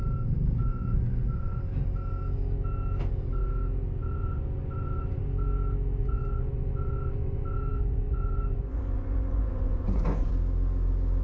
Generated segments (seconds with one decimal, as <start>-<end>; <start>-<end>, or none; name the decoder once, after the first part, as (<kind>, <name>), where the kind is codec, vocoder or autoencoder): 0.7-1.6 (vocoder, Vocos); 4.0-5.2; 6.0-10.3